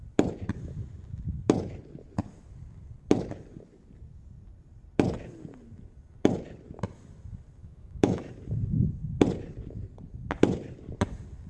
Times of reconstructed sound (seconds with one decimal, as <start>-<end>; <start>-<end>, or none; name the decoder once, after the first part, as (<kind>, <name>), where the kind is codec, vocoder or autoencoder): 7.6-8.3 (autoencoder, DAC-VAE)